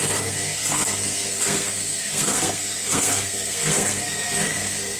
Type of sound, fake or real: fake